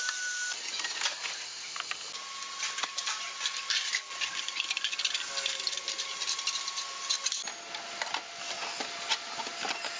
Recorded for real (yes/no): yes